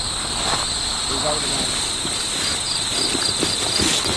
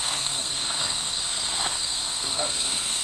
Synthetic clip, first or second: second